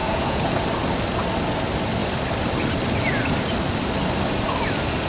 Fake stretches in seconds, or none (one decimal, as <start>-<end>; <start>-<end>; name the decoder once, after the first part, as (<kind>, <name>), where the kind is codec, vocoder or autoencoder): 0.0-0.5 (vocoder, Vocos)